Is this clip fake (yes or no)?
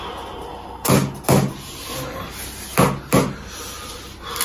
no